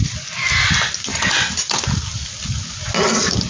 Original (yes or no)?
yes